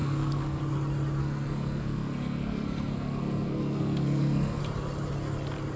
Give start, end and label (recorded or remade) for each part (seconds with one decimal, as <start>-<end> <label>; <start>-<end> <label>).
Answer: 0.0-0.6 remade; 0.6-1.2 recorded; 1.2-4.6 remade; 4.6-5.8 recorded